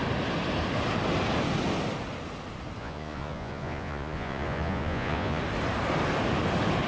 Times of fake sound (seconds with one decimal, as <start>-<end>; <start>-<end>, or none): 2.8-5.4